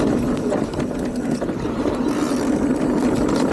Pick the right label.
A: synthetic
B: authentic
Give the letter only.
B